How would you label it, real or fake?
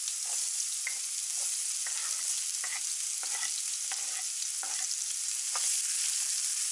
real